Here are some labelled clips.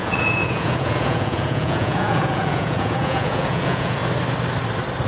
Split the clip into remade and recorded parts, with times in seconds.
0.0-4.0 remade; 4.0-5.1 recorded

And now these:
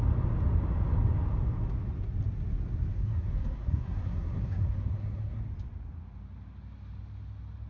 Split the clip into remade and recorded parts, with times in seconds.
0.0-2.9 recorded; 2.9-5.4 remade; 5.4-7.7 recorded